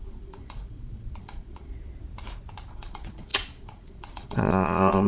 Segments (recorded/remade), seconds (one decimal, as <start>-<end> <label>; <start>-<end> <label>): 0.0-1.7 remade; 1.7-2.7 recorded; 2.7-5.1 remade

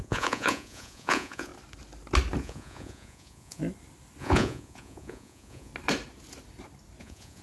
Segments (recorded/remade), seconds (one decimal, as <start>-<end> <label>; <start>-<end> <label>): 0.0-1.5 remade; 1.5-2.4 recorded; 2.4-3.6 remade; 3.6-4.2 recorded; 4.2-5.7 remade; 5.7-7.0 recorded; 7.0-7.4 remade

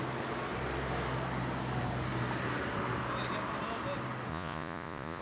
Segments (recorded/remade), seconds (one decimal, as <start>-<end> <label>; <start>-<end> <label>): 0.0-4.3 recorded; 4.3-5.2 remade

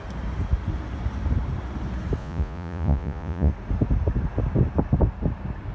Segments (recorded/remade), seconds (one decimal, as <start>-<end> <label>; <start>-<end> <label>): 0.0-2.2 recorded; 2.2-3.5 remade; 3.5-5.7 recorded

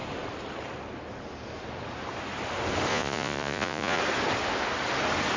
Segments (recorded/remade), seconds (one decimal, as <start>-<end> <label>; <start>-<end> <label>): 0.0-2.9 recorded; 2.9-4.0 remade; 4.0-5.4 recorded